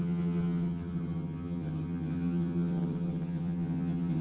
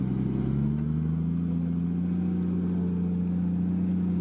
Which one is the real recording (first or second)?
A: second